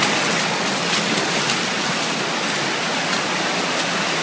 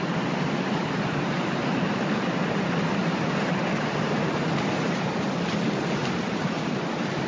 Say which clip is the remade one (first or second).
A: second